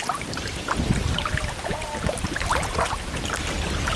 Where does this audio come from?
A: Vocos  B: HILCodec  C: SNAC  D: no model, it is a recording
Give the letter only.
D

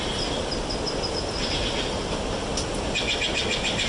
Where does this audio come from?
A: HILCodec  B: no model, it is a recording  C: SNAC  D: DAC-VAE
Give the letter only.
B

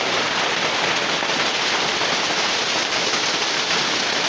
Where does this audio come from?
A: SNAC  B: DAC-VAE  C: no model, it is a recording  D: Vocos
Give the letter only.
C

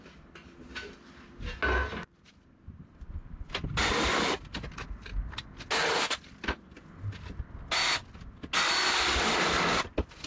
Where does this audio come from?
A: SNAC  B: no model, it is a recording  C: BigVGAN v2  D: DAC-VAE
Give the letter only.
B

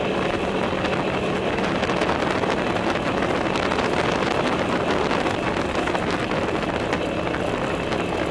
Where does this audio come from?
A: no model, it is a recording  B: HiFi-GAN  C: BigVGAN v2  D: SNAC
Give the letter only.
A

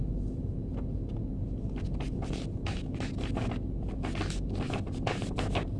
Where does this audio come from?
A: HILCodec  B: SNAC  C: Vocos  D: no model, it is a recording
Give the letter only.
D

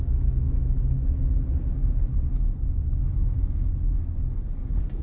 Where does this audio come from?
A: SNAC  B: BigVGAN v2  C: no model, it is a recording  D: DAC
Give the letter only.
C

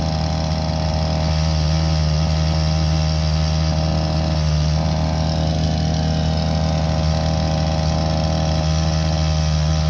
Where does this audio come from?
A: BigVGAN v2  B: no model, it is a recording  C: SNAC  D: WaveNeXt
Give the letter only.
B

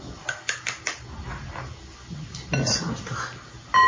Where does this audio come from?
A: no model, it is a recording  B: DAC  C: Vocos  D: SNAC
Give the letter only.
A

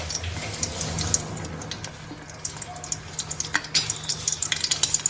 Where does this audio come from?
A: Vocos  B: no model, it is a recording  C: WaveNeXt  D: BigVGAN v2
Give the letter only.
B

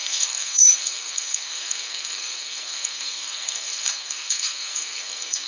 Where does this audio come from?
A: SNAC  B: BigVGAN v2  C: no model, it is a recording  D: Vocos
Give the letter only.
A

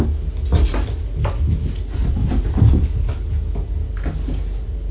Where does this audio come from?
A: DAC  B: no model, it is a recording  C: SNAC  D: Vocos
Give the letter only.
B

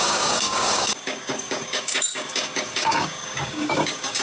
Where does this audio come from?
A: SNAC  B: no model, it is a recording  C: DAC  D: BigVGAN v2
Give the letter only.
C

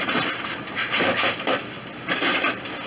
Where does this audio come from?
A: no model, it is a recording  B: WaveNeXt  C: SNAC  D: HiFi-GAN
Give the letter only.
A